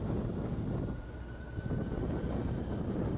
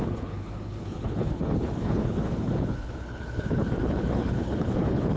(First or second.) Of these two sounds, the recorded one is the first